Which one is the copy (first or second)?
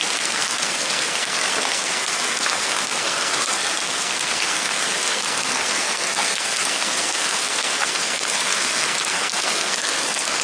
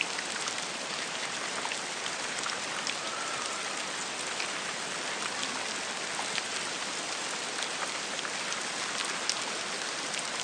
first